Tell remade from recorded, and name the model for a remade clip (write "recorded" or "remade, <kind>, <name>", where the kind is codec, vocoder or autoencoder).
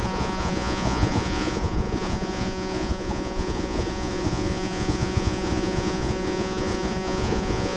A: remade, vocoder, Vocos